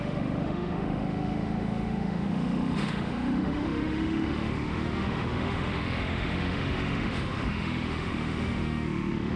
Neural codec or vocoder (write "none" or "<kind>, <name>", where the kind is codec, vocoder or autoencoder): autoencoder, DAC-VAE